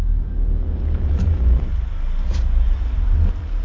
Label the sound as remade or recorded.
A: remade